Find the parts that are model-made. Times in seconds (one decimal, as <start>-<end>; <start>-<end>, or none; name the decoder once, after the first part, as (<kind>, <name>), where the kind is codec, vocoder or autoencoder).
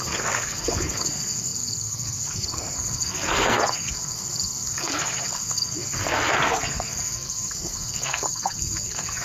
0.0-9.2 (codec, SNAC)